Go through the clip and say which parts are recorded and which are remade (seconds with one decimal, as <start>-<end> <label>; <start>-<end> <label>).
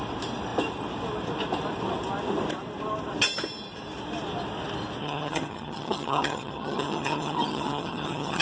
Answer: 0.0-5.0 recorded; 5.0-8.4 remade